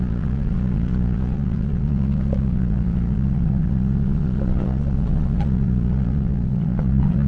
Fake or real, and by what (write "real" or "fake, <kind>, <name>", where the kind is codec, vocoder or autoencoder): fake, vocoder, Vocos